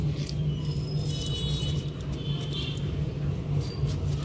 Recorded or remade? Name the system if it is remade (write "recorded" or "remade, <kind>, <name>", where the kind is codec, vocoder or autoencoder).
recorded